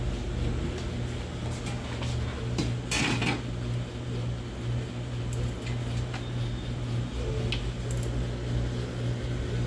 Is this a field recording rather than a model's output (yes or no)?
yes